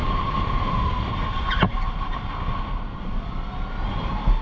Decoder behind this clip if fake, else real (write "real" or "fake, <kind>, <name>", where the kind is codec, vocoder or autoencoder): real